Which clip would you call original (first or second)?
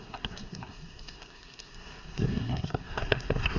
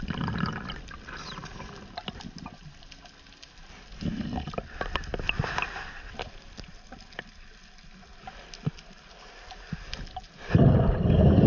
second